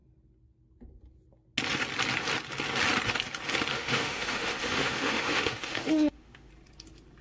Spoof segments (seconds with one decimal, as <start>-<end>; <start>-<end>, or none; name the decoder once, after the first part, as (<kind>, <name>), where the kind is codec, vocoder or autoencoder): 3.7-6.5 (autoencoder, DAC-VAE)